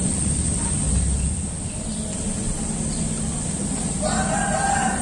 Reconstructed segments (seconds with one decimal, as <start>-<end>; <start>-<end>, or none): none